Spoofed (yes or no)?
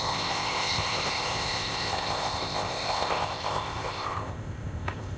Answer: yes